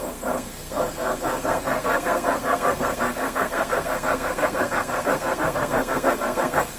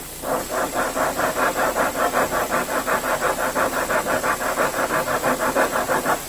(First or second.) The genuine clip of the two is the second